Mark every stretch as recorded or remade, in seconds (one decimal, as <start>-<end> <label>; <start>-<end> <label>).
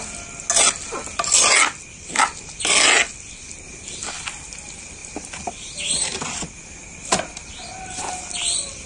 0.0-5.0 recorded; 5.0-6.5 remade; 6.5-8.9 recorded